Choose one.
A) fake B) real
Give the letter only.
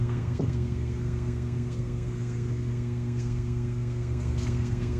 A